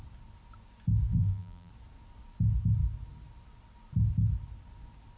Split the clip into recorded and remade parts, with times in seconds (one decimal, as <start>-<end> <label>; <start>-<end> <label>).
0.0-1.1 recorded; 1.1-1.7 remade; 1.7-5.2 recorded